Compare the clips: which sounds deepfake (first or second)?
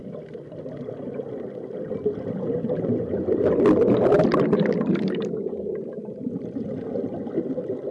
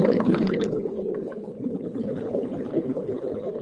second